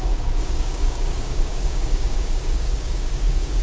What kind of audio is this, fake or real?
fake